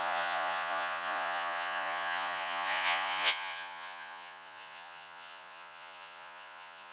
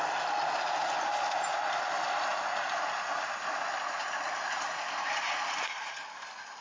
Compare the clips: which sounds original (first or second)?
second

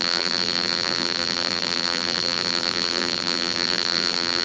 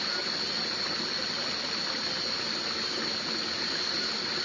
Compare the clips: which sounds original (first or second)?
second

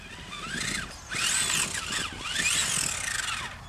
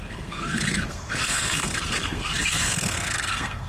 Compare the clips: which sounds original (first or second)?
first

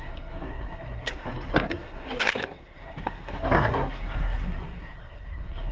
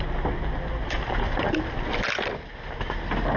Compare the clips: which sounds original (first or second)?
second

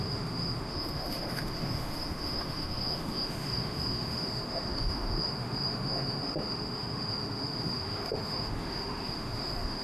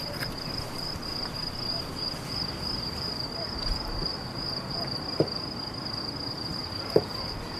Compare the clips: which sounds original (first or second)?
second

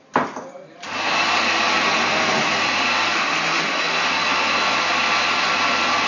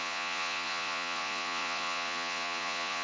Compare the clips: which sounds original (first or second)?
first